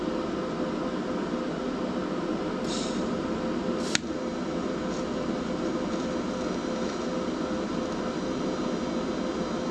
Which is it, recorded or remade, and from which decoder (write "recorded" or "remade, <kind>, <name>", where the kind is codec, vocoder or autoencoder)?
recorded